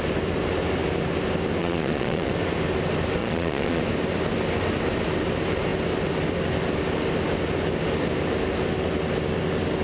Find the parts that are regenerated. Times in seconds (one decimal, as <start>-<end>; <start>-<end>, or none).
1.6-2.3; 3.2-3.8